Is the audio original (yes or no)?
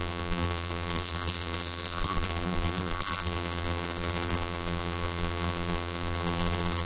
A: no